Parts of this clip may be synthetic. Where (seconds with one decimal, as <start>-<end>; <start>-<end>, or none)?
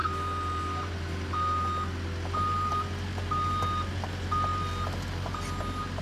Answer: none